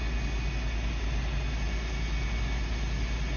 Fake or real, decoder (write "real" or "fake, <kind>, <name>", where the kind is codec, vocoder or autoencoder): real